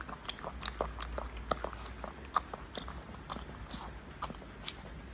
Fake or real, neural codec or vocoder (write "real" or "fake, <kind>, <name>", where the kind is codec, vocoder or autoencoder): real